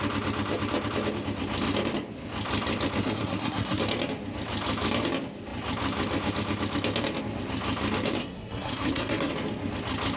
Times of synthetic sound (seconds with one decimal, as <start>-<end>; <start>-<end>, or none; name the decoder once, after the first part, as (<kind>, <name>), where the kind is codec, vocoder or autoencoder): 3.0-3.8 (codec, SNAC); 8.2-9.3